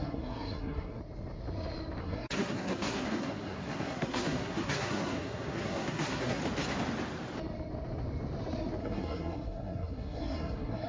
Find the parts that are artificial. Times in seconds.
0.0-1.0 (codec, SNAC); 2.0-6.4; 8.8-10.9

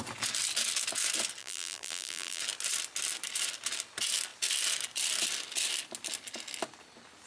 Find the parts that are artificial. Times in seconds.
1.4-2.4 (vocoder, BigVGAN v2)